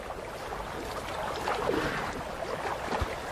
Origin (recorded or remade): recorded